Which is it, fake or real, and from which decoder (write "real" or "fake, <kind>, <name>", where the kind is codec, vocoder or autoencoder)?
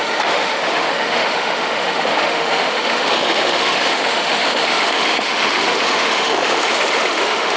fake, autoencoder, DAC-VAE